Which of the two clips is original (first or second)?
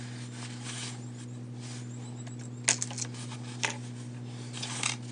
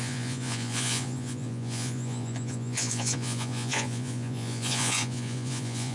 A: first